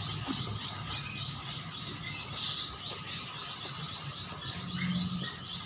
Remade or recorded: recorded